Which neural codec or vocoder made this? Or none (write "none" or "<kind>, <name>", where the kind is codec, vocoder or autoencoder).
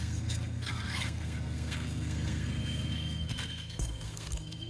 codec, SNAC